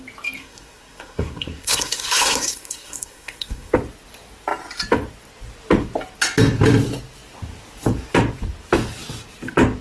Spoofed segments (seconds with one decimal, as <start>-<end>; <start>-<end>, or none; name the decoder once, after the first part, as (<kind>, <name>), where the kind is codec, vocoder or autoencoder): 0.4-3.7 (codec, SNAC)